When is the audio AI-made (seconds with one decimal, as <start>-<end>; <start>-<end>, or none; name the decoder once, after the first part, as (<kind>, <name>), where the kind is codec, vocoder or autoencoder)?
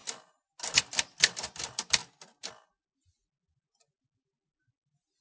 none